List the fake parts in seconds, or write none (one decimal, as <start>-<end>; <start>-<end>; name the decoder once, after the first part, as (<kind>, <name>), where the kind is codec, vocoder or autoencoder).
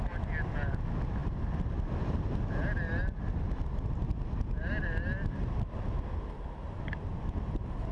none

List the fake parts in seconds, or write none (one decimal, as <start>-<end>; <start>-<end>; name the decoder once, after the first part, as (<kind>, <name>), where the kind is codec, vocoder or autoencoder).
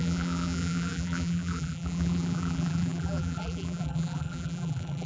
0.0-5.1 (vocoder, BigVGAN v2)